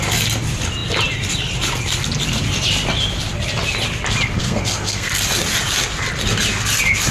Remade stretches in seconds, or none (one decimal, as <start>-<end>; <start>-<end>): 4.4-5.1